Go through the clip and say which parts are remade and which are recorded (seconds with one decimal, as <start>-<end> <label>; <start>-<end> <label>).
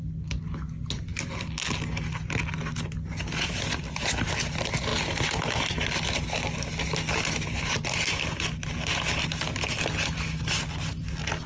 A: 0.0-11.5 recorded